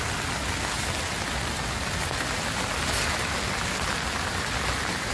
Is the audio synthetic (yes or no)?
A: no